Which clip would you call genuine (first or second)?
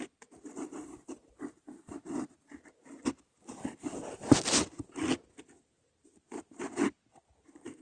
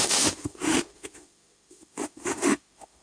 first